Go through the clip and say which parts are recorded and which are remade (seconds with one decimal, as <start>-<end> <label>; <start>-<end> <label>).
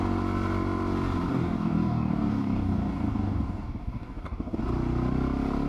0.0-1.3 recorded; 1.3-4.6 remade; 4.6-5.7 recorded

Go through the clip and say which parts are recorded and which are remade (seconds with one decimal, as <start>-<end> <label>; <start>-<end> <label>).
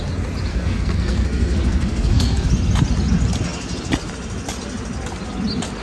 0.0-0.5 recorded; 0.5-2.5 remade; 2.5-5.8 recorded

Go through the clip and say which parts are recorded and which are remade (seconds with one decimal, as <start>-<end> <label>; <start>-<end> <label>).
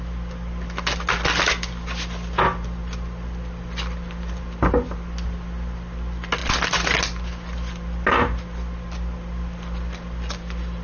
0.0-10.8 recorded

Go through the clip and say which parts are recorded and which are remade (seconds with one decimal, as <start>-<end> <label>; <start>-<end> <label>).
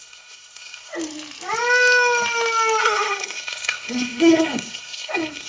0.0-0.9 remade; 0.9-2.8 recorded; 2.8-5.5 remade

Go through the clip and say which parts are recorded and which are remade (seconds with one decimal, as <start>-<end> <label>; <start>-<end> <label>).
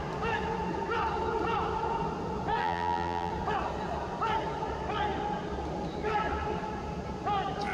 0.0-2.6 recorded; 2.6-3.3 remade; 3.3-7.7 recorded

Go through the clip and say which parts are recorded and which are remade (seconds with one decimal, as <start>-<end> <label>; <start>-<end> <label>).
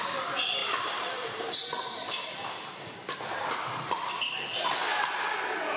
0.0-0.6 recorded; 0.6-4.1 remade; 4.1-5.8 recorded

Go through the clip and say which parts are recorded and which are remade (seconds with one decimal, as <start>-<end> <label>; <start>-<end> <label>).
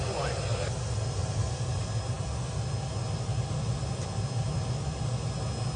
0.0-1.2 recorded; 1.2-1.9 remade; 1.9-3.3 recorded; 3.3-4.1 remade; 4.1-5.8 recorded